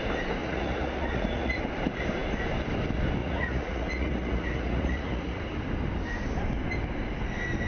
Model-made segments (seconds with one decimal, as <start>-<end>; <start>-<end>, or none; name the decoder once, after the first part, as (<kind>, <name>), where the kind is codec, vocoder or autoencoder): 0.4-1.6 (vocoder, Vocos); 3.2-5.4